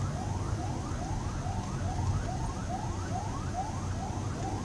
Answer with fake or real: real